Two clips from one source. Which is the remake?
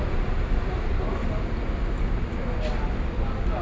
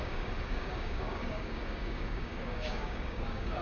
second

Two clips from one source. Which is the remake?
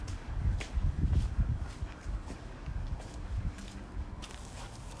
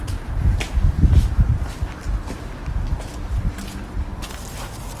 first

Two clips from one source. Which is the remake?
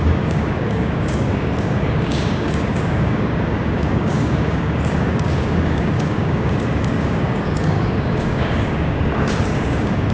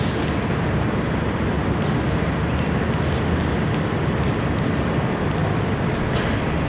first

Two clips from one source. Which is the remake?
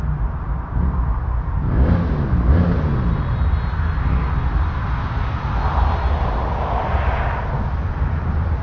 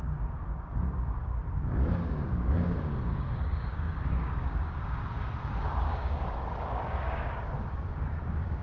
second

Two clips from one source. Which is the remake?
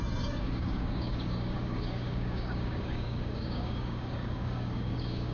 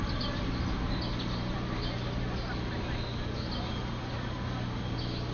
first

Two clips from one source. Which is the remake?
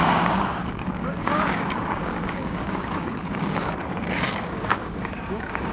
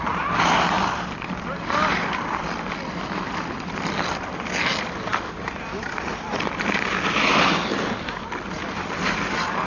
first